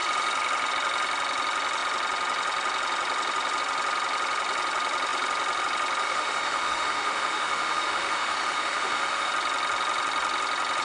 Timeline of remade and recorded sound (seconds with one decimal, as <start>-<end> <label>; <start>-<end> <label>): 0.0-6.0 recorded; 6.0-9.3 remade; 9.3-10.8 recorded